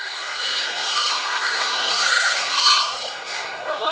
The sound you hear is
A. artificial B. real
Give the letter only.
A